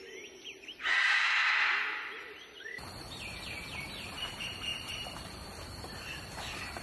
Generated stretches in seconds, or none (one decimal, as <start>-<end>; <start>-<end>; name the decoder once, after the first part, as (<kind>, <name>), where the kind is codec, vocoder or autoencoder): 0.0-1.4 (vocoder, BigVGAN v2); 2.1-6.8